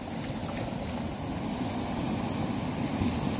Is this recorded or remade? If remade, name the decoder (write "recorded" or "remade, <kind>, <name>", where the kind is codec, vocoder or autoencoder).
recorded